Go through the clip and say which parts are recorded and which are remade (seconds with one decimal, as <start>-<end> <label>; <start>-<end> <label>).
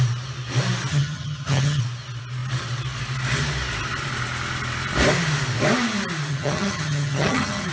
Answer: 0.0-0.9 recorded; 0.9-1.8 remade; 1.8-6.3 recorded; 6.3-7.7 remade